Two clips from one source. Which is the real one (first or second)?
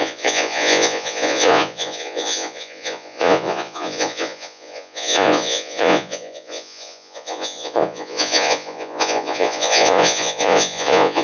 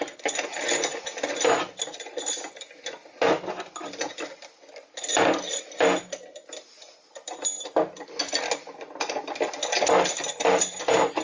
second